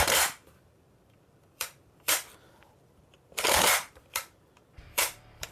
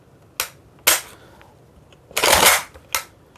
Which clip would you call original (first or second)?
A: second